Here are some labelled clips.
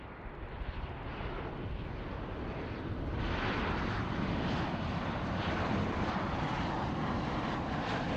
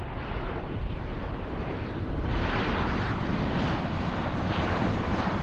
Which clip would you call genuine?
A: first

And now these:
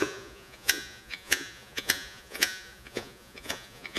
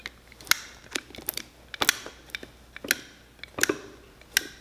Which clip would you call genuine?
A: second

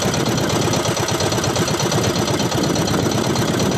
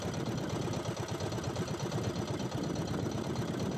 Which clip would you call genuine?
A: first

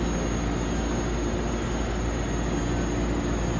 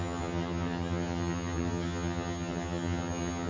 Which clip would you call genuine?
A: first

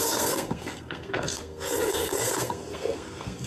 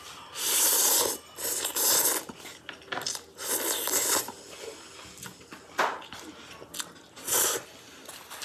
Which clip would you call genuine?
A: second